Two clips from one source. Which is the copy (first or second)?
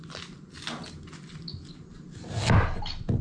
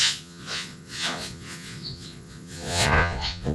second